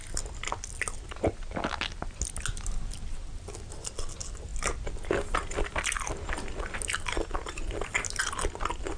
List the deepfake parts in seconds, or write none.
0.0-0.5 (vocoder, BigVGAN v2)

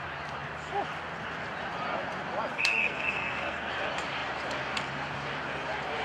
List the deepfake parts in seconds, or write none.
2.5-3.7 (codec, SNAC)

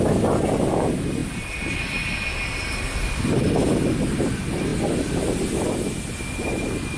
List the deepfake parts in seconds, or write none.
none